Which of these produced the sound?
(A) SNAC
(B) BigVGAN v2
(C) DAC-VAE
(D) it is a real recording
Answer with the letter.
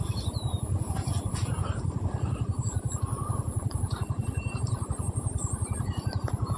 B